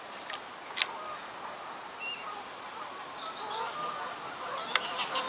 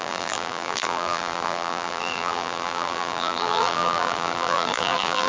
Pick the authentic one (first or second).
first